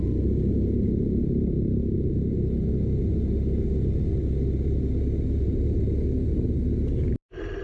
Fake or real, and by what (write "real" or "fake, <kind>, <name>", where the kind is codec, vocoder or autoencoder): real